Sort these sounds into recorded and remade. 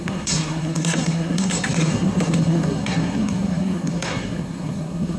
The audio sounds remade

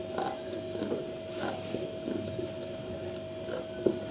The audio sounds recorded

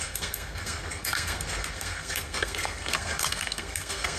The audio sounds remade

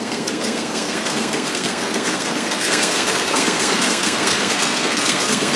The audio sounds remade